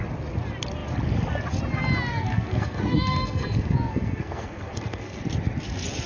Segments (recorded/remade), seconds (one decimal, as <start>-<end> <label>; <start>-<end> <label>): 0.0-2.1 recorded; 2.1-5.2 remade; 5.2-6.1 recorded